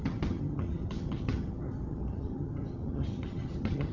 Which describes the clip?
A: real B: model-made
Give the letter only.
B